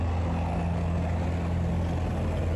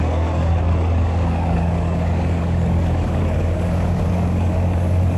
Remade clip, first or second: second